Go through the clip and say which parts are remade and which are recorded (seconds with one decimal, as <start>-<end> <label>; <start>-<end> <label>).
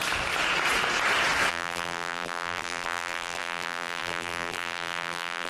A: 0.0-1.5 recorded; 1.5-5.5 remade